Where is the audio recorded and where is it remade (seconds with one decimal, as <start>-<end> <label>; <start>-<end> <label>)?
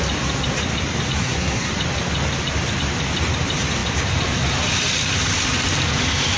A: 0.0-1.2 recorded; 1.2-1.7 remade; 1.7-6.4 recorded